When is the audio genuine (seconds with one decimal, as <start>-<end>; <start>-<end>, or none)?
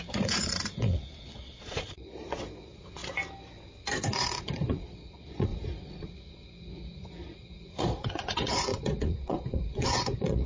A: 3.0-4.1